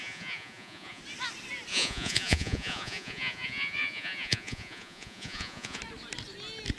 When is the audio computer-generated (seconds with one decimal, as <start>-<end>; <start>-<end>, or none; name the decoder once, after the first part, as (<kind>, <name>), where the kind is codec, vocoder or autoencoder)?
0.0-1.0 (vocoder, Vocos); 1.7-5.8